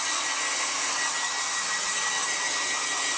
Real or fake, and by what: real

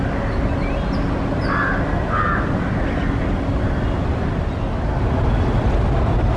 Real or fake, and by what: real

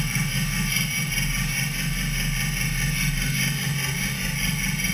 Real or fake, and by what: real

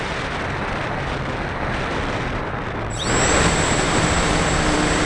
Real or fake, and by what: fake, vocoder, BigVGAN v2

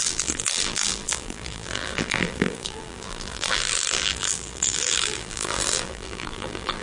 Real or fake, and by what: fake, vocoder, BigVGAN v2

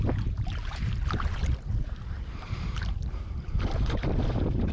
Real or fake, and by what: fake, vocoder, BigVGAN v2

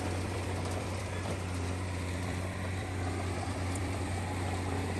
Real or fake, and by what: fake, vocoder, BigVGAN v2